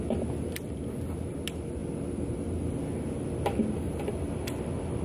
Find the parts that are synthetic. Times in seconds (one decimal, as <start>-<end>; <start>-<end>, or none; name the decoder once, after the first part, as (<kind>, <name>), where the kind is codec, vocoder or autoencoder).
none